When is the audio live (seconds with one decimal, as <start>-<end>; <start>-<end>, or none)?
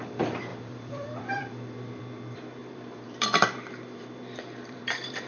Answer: 0.0-0.5; 2.0-2.6